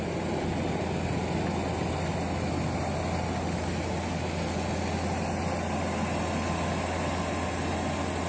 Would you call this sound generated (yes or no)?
no